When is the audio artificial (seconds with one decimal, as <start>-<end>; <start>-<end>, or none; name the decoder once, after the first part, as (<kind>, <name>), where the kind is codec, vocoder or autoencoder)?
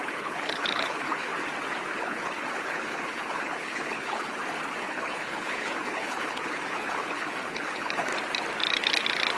0.0-1.3 (codec, HILCodec); 2.0-4.4; 4.9-8.1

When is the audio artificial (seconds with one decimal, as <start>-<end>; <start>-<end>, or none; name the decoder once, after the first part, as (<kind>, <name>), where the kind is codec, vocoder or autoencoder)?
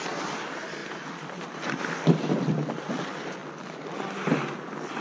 none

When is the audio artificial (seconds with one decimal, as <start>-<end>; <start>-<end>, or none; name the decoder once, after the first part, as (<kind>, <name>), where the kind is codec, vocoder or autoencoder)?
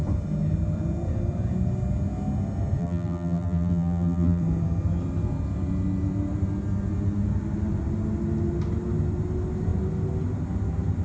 2.8-4.4 (vocoder, BigVGAN v2)